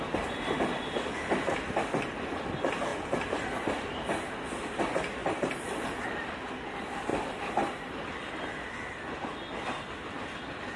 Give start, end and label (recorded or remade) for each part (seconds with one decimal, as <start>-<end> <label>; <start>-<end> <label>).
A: 0.0-5.2 recorded; 5.2-6.3 remade; 6.3-7.1 recorded; 7.1-8.0 remade; 8.0-10.8 recorded